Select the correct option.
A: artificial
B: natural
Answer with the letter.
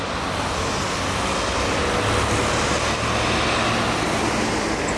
B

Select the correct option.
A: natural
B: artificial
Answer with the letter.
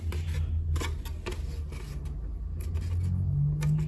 A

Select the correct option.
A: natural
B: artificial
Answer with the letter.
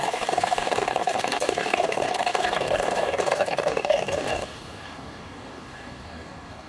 B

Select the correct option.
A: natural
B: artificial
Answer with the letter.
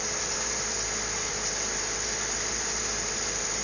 B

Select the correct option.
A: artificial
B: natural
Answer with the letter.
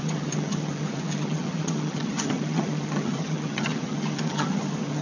A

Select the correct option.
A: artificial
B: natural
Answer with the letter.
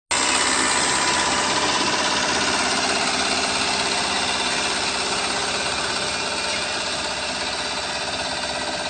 B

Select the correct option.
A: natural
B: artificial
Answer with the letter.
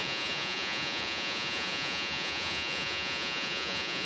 B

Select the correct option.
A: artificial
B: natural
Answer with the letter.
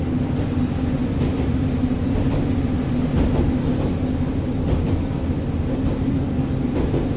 B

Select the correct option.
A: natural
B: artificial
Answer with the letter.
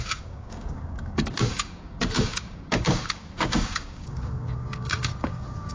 B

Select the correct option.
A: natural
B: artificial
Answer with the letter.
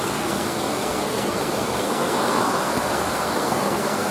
B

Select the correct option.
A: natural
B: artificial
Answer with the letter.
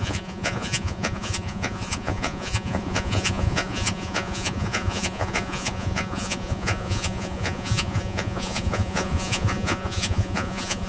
B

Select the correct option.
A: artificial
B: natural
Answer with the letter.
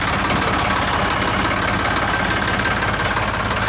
B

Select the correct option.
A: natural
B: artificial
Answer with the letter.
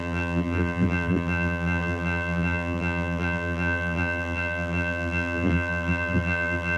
B